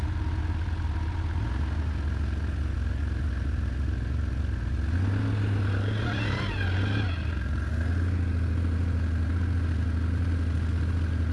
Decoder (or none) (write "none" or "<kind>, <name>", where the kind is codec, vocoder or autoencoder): none